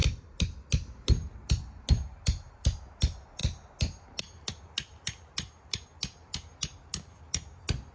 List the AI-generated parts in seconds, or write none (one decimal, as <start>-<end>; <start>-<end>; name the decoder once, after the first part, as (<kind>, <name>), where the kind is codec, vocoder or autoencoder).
none